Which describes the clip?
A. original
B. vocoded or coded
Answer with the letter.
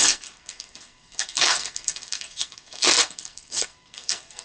B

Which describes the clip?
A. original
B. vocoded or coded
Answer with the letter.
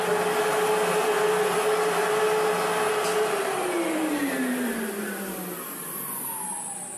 A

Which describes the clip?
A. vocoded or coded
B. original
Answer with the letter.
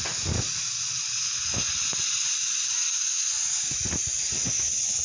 B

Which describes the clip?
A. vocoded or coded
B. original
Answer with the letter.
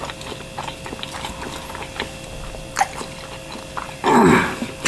B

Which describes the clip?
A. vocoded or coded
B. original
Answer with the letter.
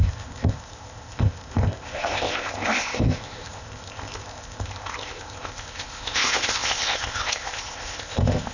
A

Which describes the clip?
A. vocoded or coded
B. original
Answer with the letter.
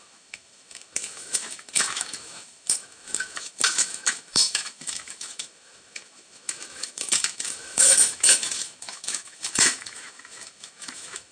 A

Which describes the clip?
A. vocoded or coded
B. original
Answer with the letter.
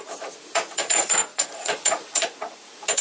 A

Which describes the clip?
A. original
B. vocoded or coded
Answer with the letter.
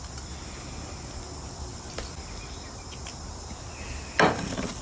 A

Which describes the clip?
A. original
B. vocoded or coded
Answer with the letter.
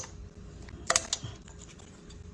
A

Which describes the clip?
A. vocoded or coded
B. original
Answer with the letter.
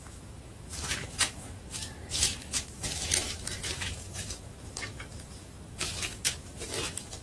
A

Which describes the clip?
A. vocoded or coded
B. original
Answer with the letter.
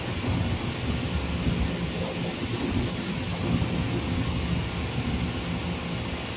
B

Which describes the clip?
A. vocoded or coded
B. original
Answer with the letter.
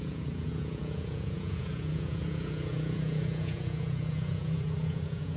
A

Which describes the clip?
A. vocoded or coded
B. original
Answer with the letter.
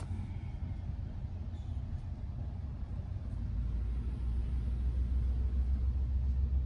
B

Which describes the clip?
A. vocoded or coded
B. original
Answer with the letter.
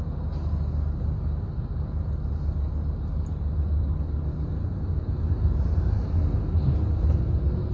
B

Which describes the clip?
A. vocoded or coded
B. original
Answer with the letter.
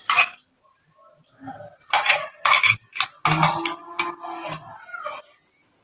B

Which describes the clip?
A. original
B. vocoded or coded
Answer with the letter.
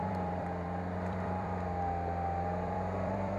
B